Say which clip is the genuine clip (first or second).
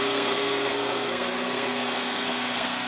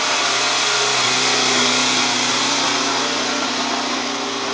second